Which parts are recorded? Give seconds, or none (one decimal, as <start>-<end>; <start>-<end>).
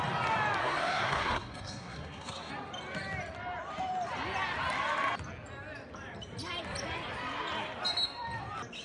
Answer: 0.0-0.6; 2.5-8.8